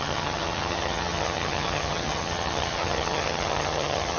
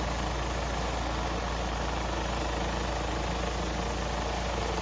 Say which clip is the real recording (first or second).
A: second